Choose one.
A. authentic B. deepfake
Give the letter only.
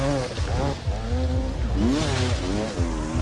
A